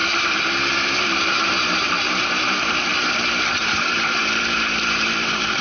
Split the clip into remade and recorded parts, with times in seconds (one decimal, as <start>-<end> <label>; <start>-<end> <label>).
0.0-2.9 remade; 2.9-3.6 recorded; 3.6-5.6 remade